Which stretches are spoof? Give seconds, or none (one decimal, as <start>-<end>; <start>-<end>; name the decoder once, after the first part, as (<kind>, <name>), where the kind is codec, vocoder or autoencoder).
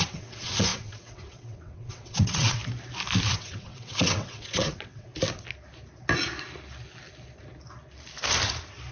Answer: 0.0-2.6 (vocoder, WaveNeXt); 3.3-5.1